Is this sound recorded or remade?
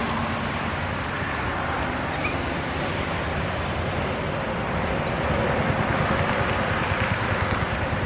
recorded